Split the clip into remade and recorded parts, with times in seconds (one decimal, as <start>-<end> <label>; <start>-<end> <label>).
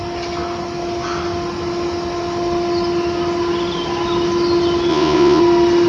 0.0-4.9 recorded; 4.9-5.4 remade; 5.4-5.9 recorded